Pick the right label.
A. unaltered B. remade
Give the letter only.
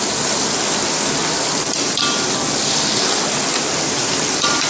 A